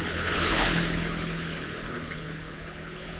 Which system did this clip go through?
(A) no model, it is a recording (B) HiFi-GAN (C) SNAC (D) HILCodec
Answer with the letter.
D